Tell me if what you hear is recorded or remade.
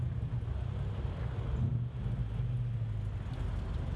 recorded